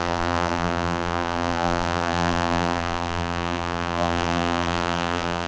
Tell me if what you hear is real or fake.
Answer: fake